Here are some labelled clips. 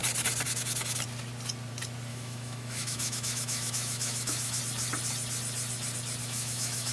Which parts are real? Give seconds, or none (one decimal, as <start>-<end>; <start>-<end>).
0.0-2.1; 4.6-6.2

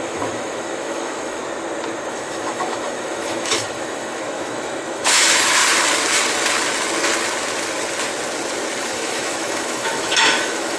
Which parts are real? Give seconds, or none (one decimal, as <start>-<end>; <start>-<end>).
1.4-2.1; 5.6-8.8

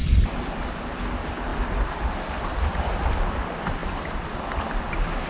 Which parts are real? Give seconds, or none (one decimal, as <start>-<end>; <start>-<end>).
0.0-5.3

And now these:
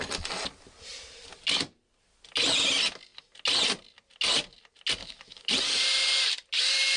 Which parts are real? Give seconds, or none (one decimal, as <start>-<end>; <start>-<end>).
0.0-5.0; 5.5-7.0

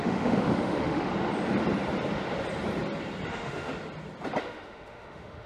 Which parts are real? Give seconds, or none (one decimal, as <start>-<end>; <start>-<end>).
1.1-3.3; 3.7-4.4

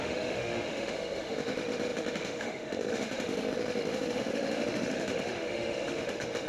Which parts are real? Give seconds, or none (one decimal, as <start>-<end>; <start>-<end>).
none

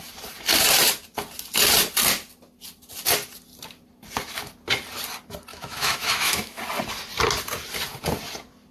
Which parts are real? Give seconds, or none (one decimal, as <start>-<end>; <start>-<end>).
0.0-5.5; 6.6-8.7